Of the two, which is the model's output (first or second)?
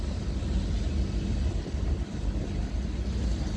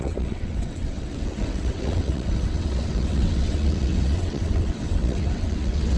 second